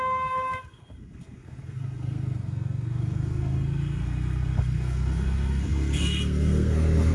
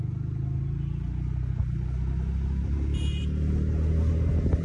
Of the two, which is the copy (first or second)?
first